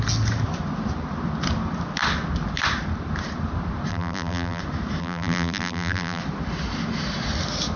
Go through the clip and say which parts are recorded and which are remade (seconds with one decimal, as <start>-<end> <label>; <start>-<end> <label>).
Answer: 0.0-3.9 recorded; 3.9-4.6 remade; 4.6-5.0 recorded; 5.0-6.2 remade; 6.2-7.8 recorded